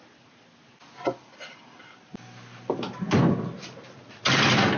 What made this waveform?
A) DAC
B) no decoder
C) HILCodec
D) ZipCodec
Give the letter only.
B